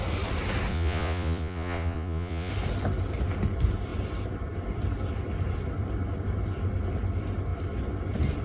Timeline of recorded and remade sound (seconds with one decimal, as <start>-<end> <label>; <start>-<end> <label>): 0.0-0.7 recorded; 0.7-2.5 remade; 2.5-8.4 recorded